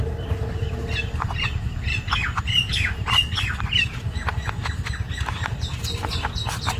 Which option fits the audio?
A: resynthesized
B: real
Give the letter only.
B